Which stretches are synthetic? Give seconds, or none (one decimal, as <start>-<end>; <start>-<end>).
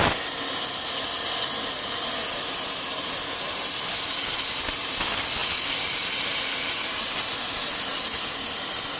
0.0-5.4; 6.2-9.0